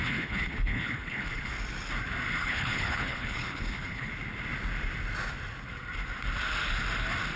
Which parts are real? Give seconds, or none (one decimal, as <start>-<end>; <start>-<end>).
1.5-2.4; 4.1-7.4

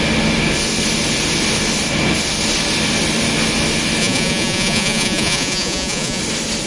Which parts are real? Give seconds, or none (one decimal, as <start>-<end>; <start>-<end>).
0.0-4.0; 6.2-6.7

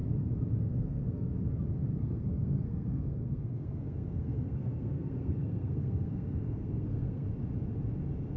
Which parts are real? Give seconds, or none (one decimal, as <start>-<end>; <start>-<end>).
0.0-0.6; 1.3-2.0; 7.3-8.4